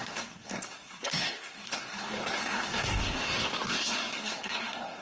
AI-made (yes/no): yes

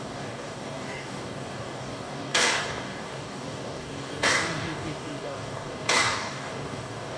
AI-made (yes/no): yes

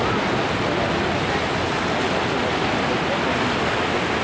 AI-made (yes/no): no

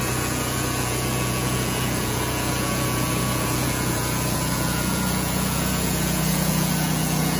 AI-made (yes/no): yes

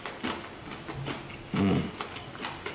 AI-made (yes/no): no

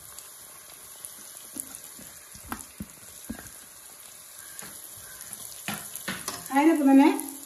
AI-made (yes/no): no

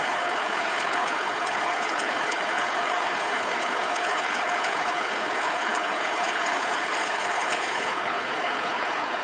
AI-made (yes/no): yes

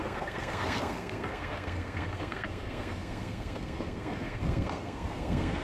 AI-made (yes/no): yes